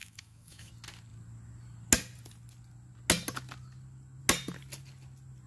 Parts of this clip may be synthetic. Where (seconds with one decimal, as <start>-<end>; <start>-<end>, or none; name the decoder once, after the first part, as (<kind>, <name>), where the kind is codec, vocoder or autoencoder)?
0.0-0.7 (autoencoder, DAC-VAE)